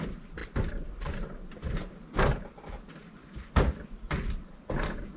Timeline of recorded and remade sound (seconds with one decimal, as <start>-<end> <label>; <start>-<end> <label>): 0.0-5.2 recorded